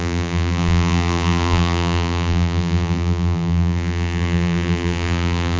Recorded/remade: remade